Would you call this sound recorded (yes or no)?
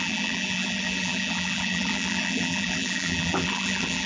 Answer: no